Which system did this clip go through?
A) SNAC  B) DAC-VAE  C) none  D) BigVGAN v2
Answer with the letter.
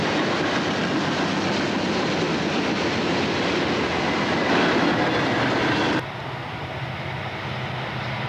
C